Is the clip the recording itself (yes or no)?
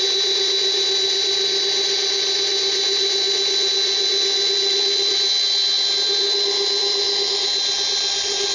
yes